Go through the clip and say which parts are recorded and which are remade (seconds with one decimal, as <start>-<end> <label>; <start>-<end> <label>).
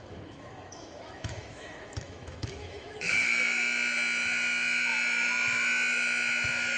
0.0-6.8 remade